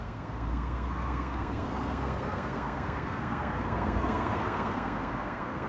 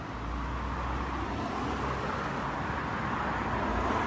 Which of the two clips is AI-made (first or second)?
first